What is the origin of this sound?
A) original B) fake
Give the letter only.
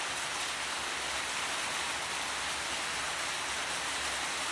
A